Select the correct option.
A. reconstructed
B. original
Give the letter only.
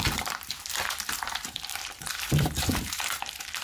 A